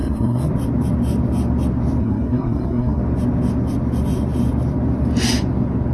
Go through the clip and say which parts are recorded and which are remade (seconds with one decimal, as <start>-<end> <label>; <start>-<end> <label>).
0.0-0.5 remade; 0.5-2.0 recorded; 2.0-3.0 remade; 3.0-5.9 recorded